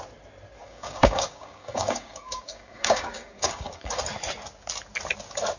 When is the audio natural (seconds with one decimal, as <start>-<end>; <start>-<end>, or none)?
0.0-0.6; 4.0-5.6